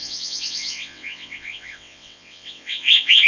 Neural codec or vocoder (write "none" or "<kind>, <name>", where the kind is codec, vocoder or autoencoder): vocoder, WaveNeXt